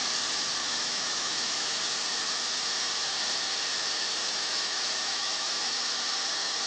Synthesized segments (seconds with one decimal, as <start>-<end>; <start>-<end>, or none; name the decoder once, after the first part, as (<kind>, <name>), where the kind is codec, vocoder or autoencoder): 0.6-1.8 (autoencoder, DAC-VAE); 4.2-5.8